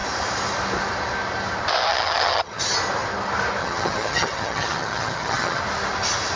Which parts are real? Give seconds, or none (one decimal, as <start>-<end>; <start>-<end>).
0.0-1.9; 2.6-3.6; 5.6-6.4